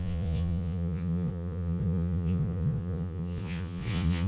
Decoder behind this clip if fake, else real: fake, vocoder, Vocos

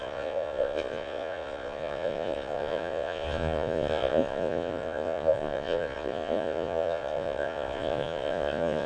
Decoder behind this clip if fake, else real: fake, vocoder, Vocos